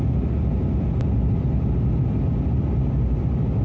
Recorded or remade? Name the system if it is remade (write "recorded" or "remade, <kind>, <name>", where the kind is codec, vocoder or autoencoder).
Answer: recorded